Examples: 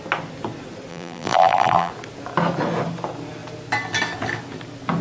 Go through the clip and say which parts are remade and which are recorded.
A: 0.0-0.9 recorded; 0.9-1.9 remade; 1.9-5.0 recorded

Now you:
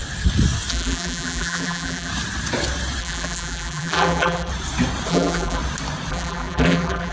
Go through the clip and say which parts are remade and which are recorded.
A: 0.0-0.7 recorded; 0.7-2.1 remade; 2.1-3.0 recorded; 3.0-4.5 remade; 4.5-5.1 recorded; 5.1-5.6 remade; 5.6-6.1 recorded; 6.1-7.1 remade

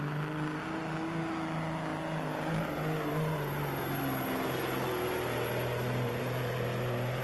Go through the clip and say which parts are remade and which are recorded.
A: 0.0-7.2 recorded

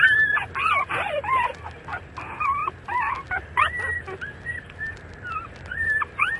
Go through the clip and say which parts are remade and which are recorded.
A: 0.0-6.4 recorded

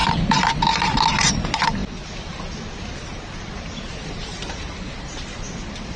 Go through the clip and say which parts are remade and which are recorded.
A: 0.0-0.7 remade; 0.7-6.0 recorded